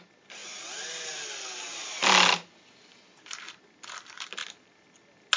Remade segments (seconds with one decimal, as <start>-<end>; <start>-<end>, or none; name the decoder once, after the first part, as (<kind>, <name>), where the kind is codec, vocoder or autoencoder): none